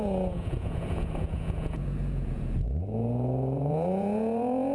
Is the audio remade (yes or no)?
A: yes